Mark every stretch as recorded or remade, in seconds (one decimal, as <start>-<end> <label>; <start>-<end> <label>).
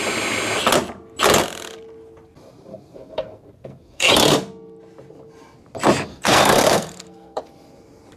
0.0-2.7 recorded; 2.7-4.1 remade; 4.1-6.1 recorded; 6.1-7.4 remade; 7.4-8.2 recorded